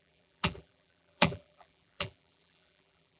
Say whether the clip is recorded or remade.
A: remade